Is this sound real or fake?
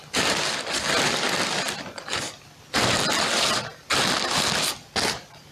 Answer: real